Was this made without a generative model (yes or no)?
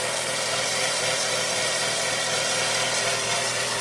no